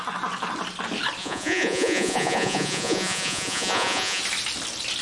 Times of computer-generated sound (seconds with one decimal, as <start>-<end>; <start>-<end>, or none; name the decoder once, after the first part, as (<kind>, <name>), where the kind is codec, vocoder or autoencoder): 1.2-4.2 (vocoder, Vocos)